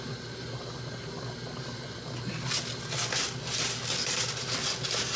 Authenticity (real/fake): real